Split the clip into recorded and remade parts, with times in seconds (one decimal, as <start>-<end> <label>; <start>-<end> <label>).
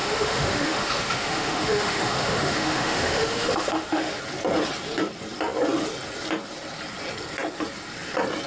0.0-4.2 remade; 4.2-8.5 recorded